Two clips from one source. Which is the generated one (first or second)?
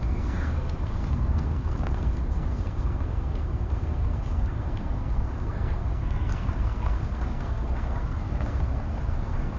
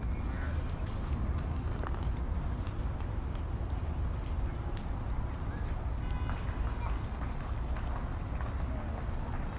first